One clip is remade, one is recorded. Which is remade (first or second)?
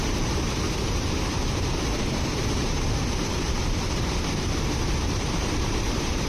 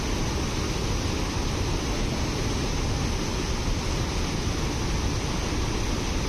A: first